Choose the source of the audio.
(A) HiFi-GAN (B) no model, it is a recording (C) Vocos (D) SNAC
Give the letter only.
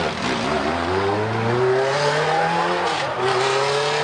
B